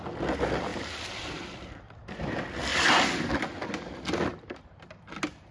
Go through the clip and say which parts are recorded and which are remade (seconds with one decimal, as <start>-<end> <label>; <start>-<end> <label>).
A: 0.0-0.7 recorded; 0.7-2.2 remade; 2.2-4.3 recorded; 4.3-4.9 remade; 4.9-5.5 recorded

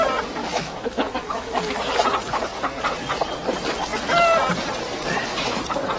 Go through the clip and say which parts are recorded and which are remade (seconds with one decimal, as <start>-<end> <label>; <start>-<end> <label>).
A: 0.0-0.4 recorded; 0.4-1.7 remade; 1.7-6.0 recorded

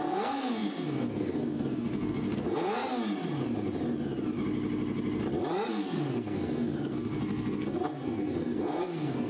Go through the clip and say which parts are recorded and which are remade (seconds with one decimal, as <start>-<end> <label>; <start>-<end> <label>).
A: 0.0-2.8 remade; 2.8-5.7 recorded; 5.7-9.3 remade